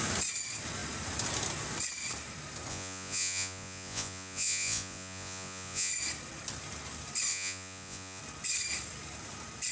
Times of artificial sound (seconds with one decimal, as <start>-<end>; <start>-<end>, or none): 2.7-5.9; 7.3-8.2